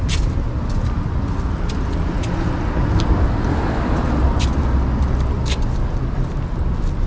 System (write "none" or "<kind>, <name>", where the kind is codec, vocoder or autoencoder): none